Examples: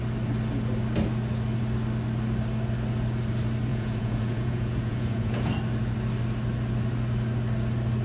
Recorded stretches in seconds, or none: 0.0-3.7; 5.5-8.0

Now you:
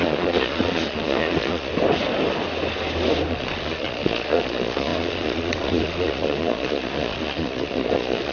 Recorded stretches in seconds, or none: 1.7-3.3

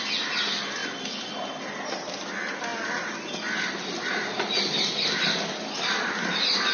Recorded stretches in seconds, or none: 0.0-6.7

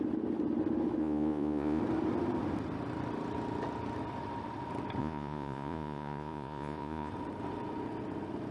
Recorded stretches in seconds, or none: 0.0-1.0; 1.8-5.0; 7.1-8.5

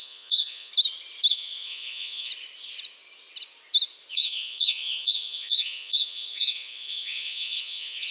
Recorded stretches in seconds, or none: 0.7-1.3; 2.3-4.1

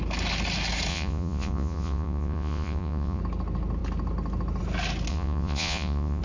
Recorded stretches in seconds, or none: 0.0-0.9; 3.2-5.1

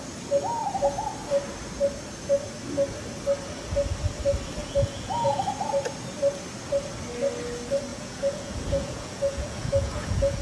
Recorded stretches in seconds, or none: 0.0-4.6; 5.4-7.9

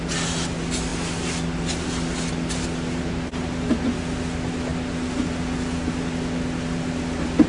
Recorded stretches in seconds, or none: 0.0-7.5